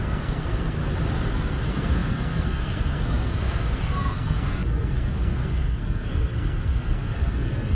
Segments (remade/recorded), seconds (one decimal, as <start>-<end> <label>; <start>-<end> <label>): 0.0-0.8 remade; 0.8-1.3 recorded; 1.3-7.7 remade